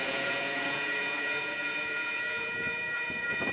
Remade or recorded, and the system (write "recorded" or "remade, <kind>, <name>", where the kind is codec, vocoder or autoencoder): remade, vocoder, Vocos